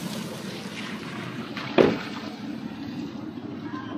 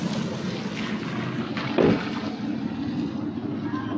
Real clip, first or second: second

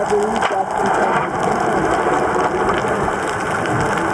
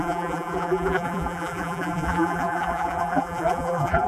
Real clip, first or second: first